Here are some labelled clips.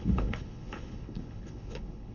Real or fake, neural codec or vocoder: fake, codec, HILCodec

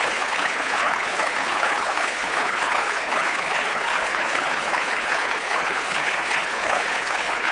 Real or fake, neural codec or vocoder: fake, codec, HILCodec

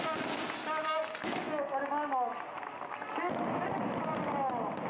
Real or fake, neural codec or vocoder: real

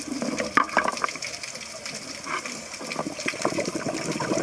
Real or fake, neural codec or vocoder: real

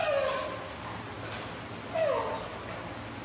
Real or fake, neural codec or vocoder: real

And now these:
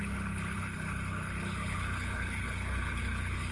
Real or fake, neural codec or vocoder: fake, codec, HILCodec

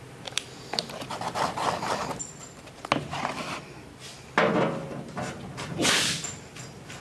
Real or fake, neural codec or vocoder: real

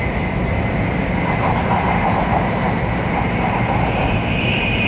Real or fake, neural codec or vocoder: real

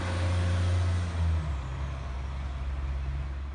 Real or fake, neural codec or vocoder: real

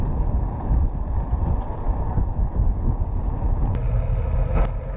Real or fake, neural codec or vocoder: real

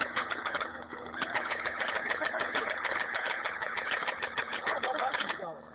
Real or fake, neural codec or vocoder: fake, codec, HILCodec